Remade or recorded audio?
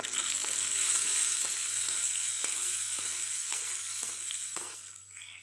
remade